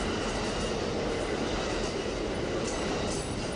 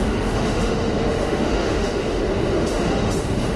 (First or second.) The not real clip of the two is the second